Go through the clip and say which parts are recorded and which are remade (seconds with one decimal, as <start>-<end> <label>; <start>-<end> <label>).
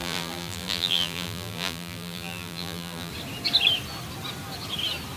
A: 0.0-3.1 remade; 3.1-5.2 recorded